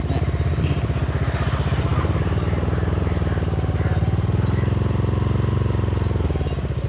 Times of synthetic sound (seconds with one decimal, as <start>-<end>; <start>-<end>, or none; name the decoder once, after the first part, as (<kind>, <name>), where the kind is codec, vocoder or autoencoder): none